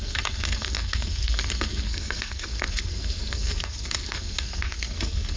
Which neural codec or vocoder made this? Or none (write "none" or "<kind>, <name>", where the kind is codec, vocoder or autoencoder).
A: codec, SNAC